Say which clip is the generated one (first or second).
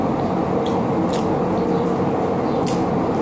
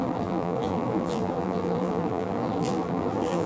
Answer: second